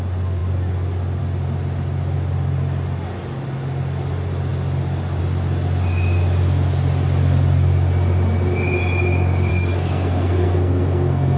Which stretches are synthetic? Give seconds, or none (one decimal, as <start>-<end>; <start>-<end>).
9.5-11.4